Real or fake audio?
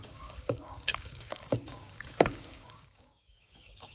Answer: fake